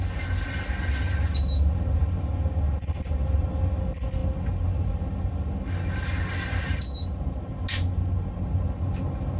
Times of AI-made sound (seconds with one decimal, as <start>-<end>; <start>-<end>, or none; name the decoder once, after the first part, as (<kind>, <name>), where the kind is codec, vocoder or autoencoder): none